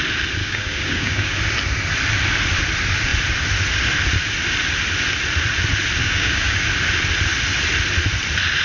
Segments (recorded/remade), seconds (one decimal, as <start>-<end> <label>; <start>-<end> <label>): 0.0-0.4 recorded; 0.4-1.4 remade; 1.4-6.0 recorded; 6.0-6.6 remade; 6.6-8.6 recorded